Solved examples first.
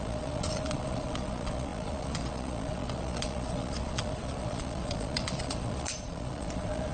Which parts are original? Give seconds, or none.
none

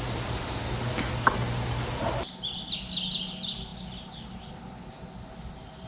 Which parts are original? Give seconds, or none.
0.0-5.9